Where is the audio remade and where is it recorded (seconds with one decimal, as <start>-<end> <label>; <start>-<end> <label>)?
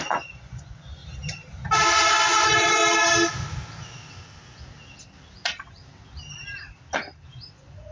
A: 0.0-1.0 remade; 1.0-2.1 recorded; 2.1-2.8 remade; 2.8-7.5 recorded; 7.5-7.9 remade